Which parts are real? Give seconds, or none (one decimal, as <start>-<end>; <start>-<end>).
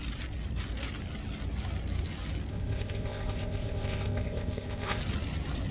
0.0-2.5; 5.0-5.7